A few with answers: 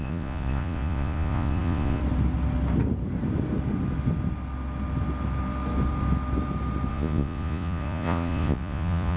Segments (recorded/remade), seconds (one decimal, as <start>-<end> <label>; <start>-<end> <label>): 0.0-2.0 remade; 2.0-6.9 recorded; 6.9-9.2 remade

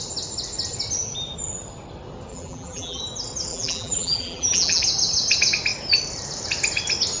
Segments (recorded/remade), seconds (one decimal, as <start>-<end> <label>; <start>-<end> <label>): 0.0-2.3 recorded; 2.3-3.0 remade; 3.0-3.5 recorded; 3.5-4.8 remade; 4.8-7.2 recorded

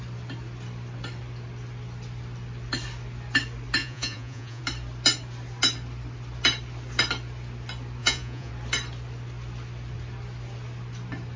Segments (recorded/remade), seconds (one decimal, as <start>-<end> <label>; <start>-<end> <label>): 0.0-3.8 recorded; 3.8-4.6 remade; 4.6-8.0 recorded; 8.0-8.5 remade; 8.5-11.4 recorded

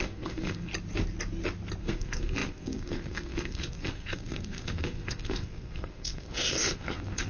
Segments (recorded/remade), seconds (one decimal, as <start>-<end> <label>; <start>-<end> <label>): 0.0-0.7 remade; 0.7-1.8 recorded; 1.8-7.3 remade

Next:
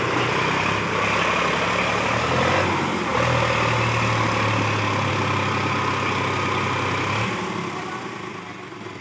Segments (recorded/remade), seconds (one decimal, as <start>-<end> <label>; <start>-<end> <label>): 0.0-9.0 recorded

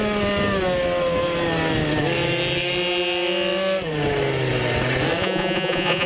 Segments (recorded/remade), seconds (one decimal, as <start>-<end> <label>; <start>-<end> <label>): 0.0-5.2 recorded; 5.2-6.1 remade